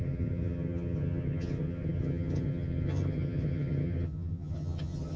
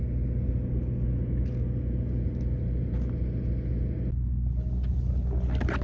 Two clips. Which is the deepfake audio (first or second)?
first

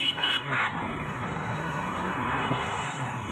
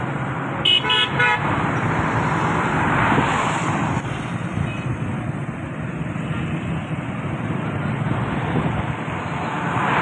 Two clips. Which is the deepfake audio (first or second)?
first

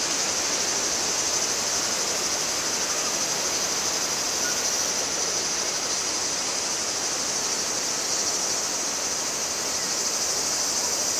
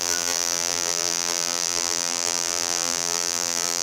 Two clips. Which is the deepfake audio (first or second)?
second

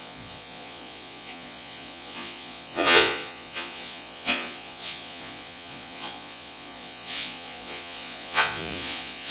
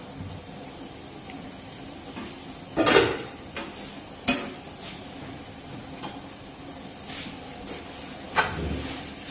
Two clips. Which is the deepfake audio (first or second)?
first